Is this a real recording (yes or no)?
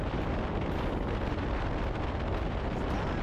yes